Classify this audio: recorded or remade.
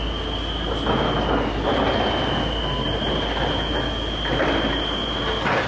recorded